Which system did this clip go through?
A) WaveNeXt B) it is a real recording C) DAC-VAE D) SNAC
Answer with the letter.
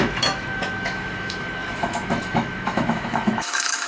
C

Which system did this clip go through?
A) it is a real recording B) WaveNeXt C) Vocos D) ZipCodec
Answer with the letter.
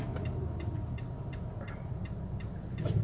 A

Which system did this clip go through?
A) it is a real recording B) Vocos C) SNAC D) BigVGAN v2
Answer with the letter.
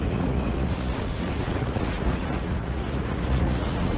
B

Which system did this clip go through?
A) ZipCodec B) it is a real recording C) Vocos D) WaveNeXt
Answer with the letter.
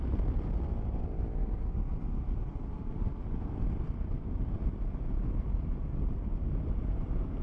B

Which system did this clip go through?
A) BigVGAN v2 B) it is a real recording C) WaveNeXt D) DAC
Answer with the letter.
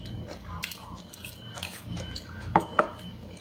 D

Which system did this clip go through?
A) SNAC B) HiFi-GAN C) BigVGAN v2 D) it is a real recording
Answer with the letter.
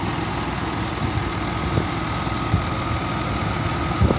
D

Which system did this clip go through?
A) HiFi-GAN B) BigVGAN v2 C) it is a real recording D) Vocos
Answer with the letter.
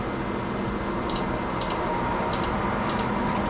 C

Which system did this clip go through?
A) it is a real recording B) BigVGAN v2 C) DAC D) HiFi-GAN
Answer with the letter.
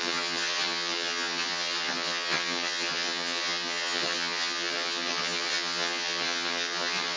D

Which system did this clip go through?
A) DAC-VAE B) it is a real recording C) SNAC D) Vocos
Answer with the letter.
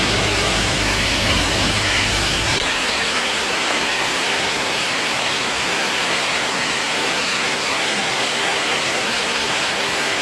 C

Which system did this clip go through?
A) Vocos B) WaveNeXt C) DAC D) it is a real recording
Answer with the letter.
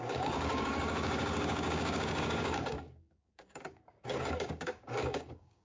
C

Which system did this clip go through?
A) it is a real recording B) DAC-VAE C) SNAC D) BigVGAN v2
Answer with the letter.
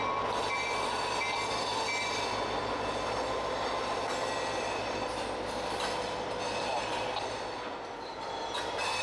A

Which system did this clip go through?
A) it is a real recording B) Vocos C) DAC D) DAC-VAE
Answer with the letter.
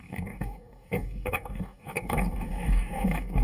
C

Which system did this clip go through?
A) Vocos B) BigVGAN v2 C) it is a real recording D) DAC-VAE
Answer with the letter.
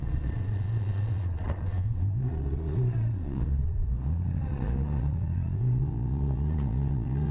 A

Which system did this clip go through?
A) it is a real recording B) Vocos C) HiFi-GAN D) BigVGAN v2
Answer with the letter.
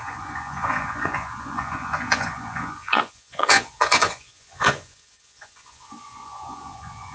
B